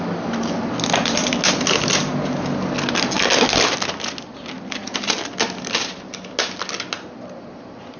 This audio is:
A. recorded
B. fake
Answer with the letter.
A